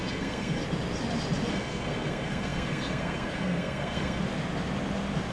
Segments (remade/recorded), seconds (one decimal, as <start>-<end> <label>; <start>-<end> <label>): 0.0-0.6 remade; 0.6-1.5 recorded; 1.5-4.2 remade; 4.2-5.3 recorded